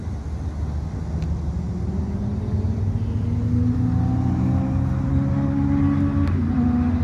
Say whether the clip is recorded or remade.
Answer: recorded